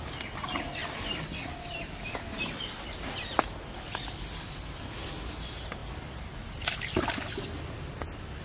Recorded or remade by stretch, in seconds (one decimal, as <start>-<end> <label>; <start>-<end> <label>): 0.0-8.4 recorded